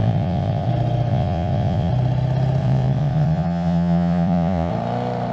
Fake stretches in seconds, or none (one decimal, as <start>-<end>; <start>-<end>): 0.0-0.7; 1.1-1.9; 2.6-4.7